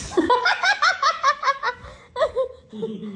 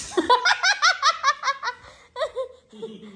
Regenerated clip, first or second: first